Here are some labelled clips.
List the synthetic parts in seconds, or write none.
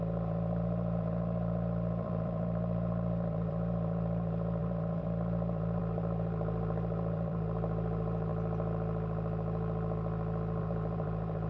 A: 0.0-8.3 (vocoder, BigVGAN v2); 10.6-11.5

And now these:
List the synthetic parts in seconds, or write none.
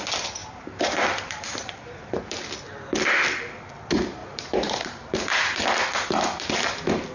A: 0.4-2.2 (vocoder, BigVGAN v2); 4.2-5.6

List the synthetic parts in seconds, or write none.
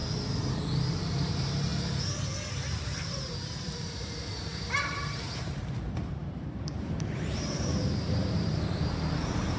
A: 0.9-1.7 (vocoder, BigVGAN v2); 2.5-9.6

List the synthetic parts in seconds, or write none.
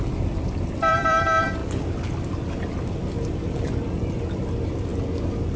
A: 0.0-1.6 (vocoder, BigVGAN v2); 3.1-4.9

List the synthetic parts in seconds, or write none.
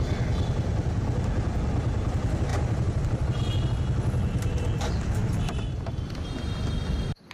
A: 2.5-3.4 (vocoder, BigVGAN v2); 5.2-6.0